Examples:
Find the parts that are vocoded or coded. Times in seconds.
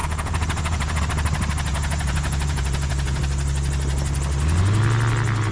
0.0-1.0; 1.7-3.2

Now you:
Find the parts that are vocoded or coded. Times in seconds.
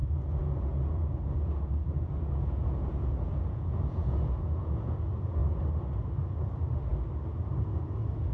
0.0-5.0